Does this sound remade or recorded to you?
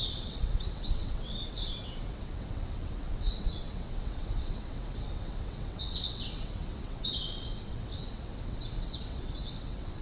remade